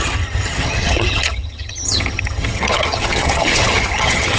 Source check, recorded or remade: remade